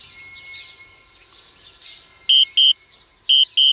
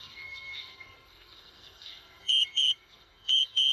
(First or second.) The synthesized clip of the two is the second